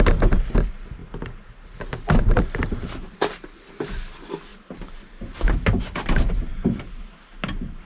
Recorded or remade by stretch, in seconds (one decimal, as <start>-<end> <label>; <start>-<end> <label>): 0.0-6.5 recorded; 6.5-7.0 remade; 7.0-7.8 recorded